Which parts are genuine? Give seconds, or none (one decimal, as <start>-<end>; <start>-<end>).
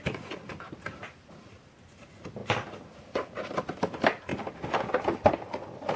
0.0-6.0